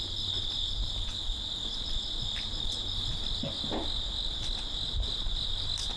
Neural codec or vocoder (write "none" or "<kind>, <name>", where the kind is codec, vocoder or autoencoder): vocoder, BigVGAN v2